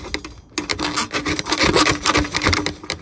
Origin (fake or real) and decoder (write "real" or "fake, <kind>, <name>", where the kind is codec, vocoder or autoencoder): real